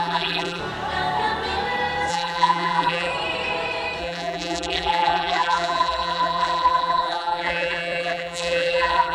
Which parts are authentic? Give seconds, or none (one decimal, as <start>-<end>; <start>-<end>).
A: 0.6-2.1; 3.1-4.0